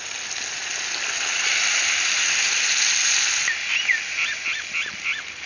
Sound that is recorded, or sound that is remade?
recorded